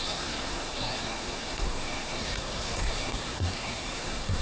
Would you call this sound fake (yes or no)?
yes